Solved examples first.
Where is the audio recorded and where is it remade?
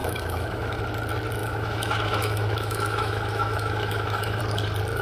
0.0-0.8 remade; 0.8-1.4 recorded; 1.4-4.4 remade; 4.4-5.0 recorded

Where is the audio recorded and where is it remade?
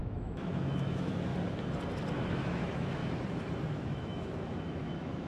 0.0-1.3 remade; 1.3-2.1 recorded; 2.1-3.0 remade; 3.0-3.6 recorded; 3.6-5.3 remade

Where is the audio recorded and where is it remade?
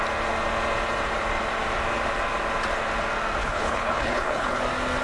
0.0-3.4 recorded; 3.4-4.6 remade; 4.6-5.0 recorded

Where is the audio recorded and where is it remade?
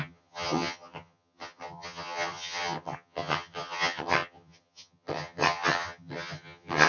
0.0-6.9 remade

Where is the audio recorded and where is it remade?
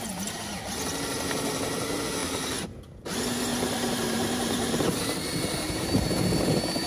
0.0-2.2 recorded; 2.2-2.8 remade; 2.8-3.5 recorded; 3.5-6.1 remade; 6.1-6.9 recorded